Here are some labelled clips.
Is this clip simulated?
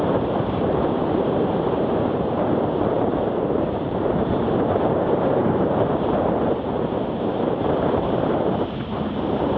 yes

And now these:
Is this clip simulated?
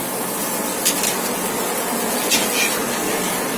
no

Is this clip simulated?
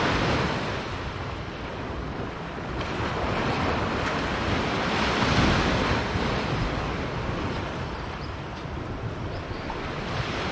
no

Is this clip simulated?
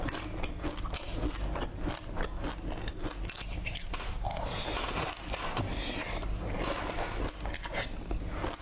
no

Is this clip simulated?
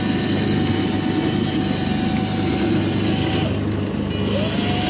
no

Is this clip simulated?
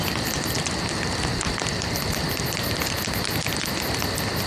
no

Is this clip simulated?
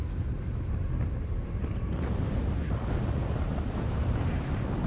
no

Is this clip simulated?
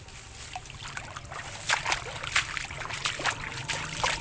no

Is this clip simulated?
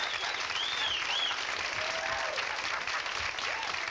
no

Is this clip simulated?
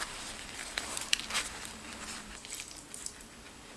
yes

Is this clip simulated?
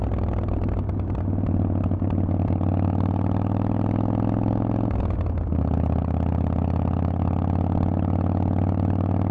no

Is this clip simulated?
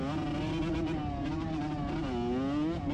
no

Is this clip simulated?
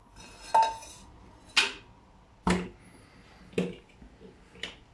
no